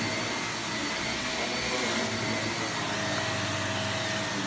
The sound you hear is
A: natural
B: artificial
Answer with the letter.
A